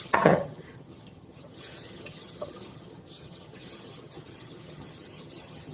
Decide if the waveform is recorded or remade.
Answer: remade